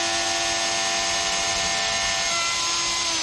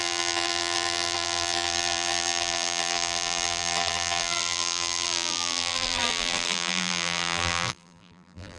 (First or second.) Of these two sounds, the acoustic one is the first